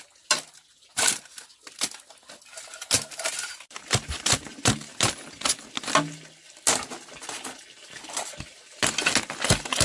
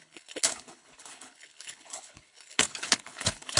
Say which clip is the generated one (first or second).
second